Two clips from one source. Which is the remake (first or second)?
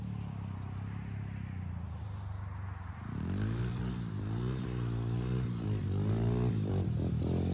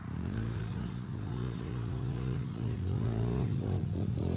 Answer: second